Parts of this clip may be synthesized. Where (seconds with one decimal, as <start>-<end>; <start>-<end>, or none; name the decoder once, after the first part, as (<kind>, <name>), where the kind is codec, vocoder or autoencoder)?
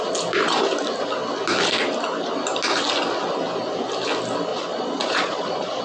4.5-5.8 (vocoder, Vocos)